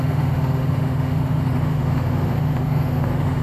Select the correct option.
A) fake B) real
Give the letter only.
A